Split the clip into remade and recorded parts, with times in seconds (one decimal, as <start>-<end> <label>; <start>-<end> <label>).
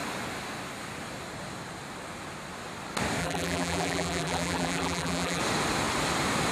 0.0-3.2 recorded; 3.2-5.4 remade; 5.4-6.5 recorded